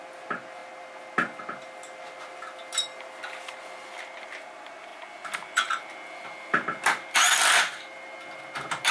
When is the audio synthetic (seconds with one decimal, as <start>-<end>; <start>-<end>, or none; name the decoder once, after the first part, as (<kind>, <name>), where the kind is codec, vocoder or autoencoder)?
none